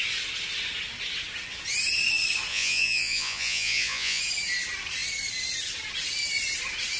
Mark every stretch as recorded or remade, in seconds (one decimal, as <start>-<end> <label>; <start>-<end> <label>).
0.0-2.5 recorded; 2.5-4.2 remade; 4.2-7.0 recorded